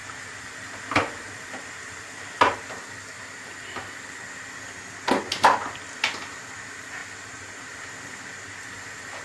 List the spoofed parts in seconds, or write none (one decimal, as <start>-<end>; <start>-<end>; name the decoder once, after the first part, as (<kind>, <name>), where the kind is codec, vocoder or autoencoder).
none